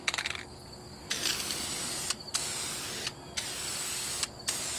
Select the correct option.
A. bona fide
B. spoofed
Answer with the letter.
A